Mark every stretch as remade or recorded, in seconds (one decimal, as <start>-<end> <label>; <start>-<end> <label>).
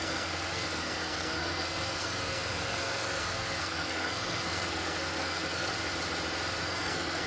0.0-5.7 remade; 5.7-6.6 recorded; 6.6-7.3 remade